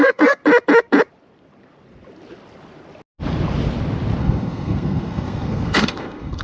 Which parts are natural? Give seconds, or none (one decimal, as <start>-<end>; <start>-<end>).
0.4-4.2